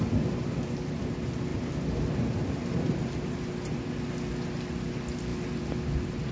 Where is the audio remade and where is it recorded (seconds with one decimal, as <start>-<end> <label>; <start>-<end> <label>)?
0.0-6.3 recorded

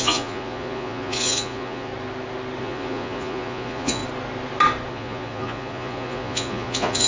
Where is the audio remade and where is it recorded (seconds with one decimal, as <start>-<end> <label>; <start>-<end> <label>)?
0.0-1.9 remade; 1.9-2.6 recorded; 2.6-4.0 remade; 4.0-4.9 recorded; 4.9-7.1 remade

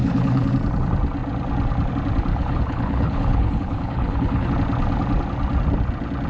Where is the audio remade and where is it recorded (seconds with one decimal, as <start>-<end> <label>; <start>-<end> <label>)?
0.0-0.5 remade; 0.5-2.3 recorded; 2.3-4.5 remade; 4.5-6.3 recorded

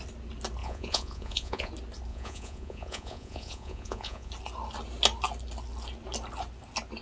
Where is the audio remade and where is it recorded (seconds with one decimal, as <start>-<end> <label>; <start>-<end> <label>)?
0.0-0.6 recorded; 0.6-1.7 remade; 1.7-2.1 recorded; 2.1-4.3 remade; 4.3-7.0 recorded

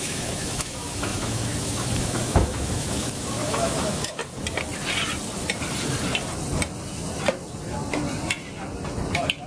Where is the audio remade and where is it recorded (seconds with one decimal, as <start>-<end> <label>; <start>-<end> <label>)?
0.0-4.2 remade; 4.2-9.5 recorded